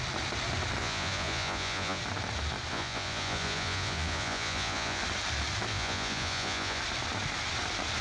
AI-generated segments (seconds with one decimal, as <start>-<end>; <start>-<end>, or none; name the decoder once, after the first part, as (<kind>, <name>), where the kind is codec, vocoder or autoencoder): 0.8-2.0 (vocoder, Vocos); 2.7-5.0; 5.7-6.8